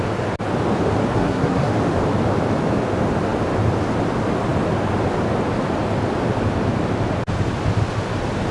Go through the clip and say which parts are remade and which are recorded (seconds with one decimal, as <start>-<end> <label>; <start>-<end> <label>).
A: 0.0-1.1 recorded; 1.1-1.7 remade; 1.7-8.5 recorded